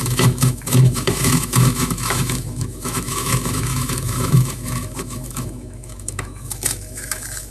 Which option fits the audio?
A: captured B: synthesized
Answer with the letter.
B